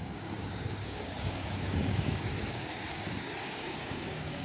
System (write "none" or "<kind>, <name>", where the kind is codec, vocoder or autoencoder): codec, DAC